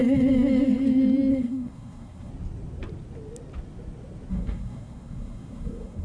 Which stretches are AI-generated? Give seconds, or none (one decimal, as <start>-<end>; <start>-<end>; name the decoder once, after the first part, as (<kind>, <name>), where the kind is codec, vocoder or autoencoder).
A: 1.3-2.3 (codec, SNAC); 4.3-6.0